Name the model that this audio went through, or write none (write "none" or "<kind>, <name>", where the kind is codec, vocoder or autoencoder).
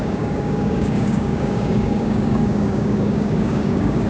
codec, DAC